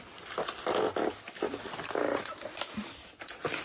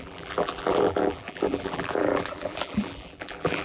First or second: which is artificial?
second